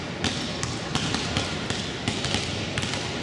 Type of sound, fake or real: real